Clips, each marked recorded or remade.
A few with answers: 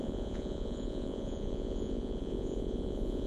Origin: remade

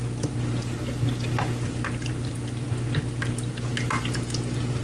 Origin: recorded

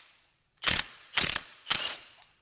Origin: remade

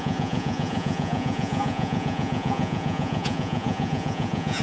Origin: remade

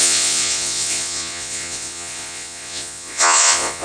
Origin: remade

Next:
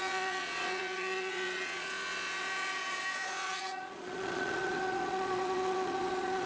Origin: remade